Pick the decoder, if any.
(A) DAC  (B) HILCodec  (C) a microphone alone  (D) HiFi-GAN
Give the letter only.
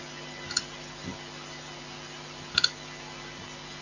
C